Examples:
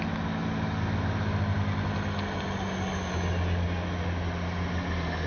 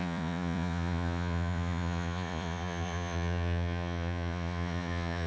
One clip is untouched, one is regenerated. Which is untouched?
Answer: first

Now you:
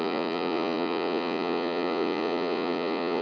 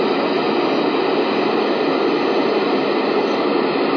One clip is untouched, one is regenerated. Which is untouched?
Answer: second